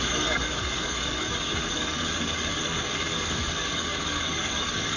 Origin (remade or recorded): remade